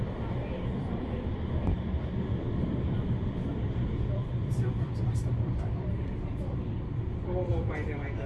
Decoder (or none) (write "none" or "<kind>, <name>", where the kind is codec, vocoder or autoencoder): vocoder, BigVGAN v2